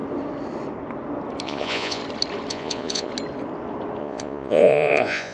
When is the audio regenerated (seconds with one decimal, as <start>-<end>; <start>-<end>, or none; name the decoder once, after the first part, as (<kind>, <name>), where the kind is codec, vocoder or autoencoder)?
1.4-2.0 (vocoder, Vocos); 2.5-3.1; 4.0-5.3